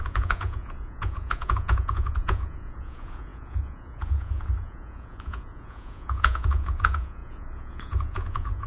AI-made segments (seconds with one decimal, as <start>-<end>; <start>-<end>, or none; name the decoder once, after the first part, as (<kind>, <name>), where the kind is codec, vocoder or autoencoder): 0.0-8.7 (vocoder, Vocos)